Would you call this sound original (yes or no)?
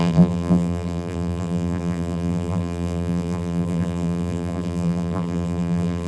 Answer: no